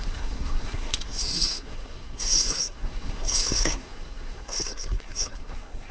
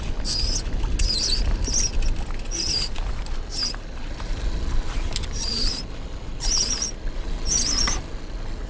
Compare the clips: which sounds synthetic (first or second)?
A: first